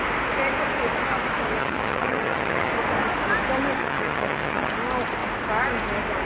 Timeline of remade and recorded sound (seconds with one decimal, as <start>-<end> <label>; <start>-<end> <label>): 0.0-1.6 recorded; 1.6-2.7 remade; 2.7-3.8 recorded; 3.8-4.7 remade; 4.7-6.2 recorded